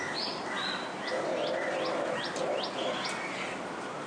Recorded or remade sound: recorded